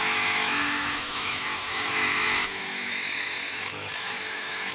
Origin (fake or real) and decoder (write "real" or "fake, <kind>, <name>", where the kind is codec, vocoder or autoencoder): fake, autoencoder, DAC-VAE